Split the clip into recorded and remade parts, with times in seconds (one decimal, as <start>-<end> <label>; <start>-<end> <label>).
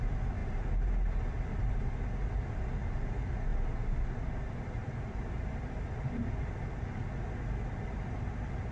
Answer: 0.0-8.7 recorded